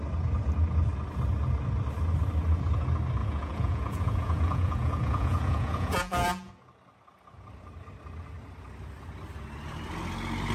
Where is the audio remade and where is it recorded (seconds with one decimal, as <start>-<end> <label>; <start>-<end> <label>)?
0.0-3.2 recorded; 3.2-6.5 remade; 6.5-10.5 recorded